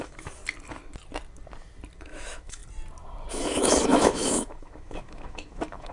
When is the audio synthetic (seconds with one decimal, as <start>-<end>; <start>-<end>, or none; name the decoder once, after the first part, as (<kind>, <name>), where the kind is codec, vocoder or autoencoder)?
0.0-0.4 (autoencoder, DAC-VAE); 2.0-2.6; 3.3-5.9